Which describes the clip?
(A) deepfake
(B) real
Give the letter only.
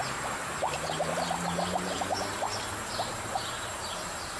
A